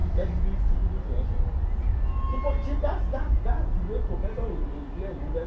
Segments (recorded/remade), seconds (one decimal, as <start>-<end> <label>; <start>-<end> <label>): 0.0-5.5 recorded